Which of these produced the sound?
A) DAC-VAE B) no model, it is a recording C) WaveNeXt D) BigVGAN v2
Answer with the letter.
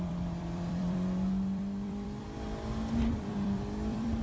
D